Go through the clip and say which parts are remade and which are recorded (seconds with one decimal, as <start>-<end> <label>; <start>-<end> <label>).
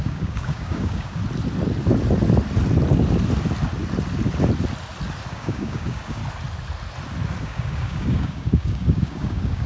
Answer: 0.0-1.2 remade; 1.2-5.3 recorded; 5.3-6.2 remade; 6.2-7.4 recorded; 7.4-9.7 remade